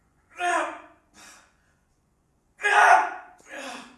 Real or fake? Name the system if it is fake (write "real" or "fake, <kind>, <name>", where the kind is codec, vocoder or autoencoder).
fake, vocoder, Vocos